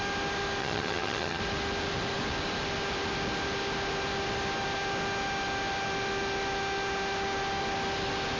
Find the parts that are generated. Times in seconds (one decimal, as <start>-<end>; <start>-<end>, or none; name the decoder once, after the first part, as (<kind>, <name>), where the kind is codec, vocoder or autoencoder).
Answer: 0.6-1.4 (vocoder, HiFi-GAN)